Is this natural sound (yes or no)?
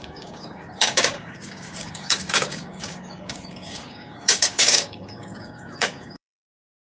no